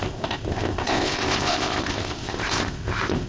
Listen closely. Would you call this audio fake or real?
fake